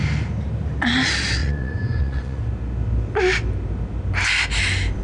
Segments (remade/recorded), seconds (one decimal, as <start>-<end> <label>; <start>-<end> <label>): 0.0-1.4 recorded; 1.4-2.4 remade; 2.4-5.0 recorded